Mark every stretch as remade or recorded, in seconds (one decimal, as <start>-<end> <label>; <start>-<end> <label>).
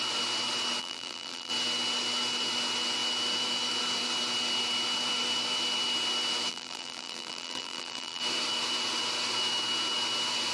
0.0-0.8 recorded; 0.8-1.5 remade; 1.5-6.5 recorded; 6.5-8.2 remade; 8.2-10.5 recorded